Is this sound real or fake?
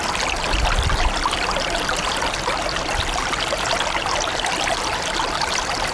real